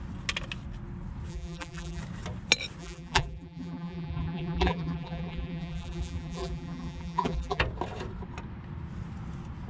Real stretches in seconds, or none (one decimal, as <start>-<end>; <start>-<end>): 0.0-1.3; 2.0-2.8; 7.6-9.7